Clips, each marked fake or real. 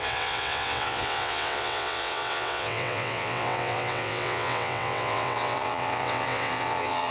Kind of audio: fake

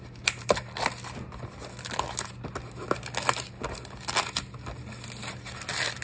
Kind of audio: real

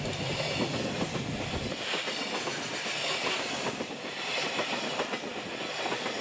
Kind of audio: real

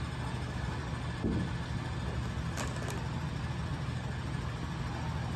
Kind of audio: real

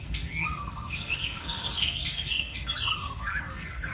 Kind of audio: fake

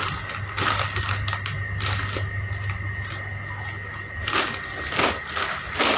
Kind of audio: real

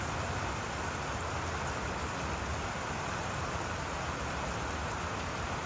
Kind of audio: real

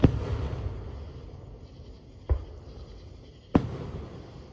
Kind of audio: real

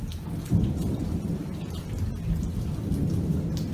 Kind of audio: real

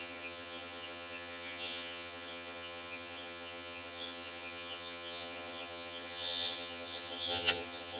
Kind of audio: fake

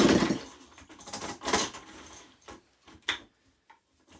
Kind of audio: real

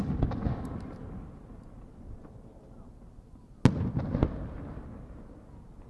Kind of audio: real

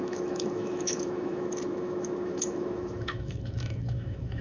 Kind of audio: fake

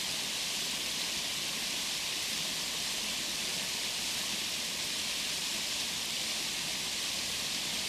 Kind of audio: real